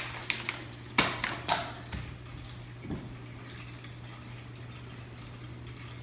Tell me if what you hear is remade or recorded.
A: recorded